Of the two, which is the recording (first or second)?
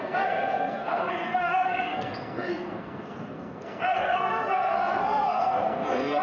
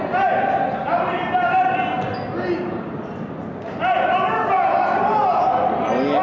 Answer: second